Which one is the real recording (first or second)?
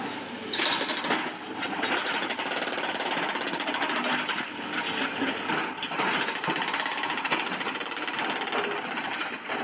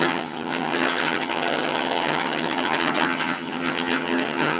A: first